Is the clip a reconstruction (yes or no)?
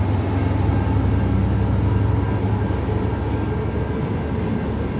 no